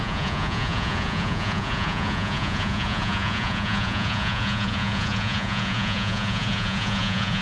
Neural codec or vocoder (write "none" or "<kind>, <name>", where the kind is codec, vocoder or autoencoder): vocoder, Vocos